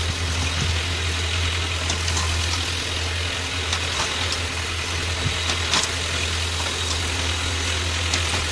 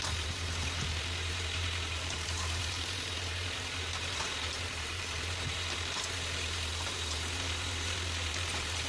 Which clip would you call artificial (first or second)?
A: second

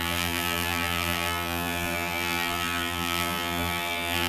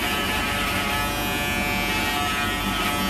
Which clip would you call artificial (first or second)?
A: first